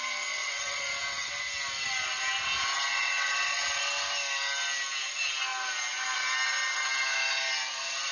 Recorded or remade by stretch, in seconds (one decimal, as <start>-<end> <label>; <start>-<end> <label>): 0.0-0.4 recorded; 0.4-1.3 remade; 1.3-2.9 recorded; 2.9-3.8 remade; 3.8-8.1 recorded